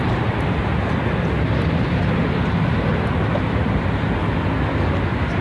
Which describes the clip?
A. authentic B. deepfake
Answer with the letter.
A